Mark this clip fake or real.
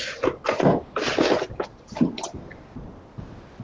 real